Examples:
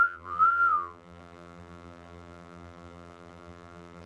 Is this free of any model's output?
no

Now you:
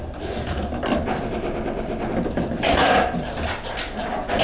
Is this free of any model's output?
yes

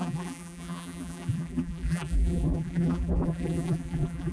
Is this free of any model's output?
no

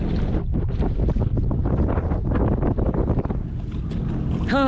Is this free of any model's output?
yes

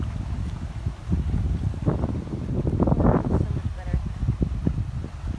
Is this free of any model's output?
yes